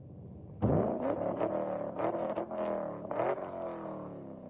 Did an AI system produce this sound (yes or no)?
no